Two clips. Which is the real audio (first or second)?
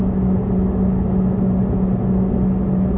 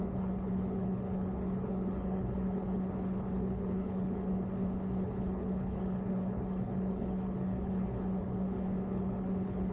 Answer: first